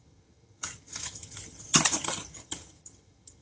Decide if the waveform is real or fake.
fake